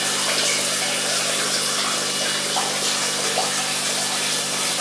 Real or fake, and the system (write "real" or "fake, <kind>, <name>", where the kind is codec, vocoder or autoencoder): real